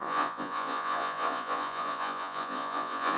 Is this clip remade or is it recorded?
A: remade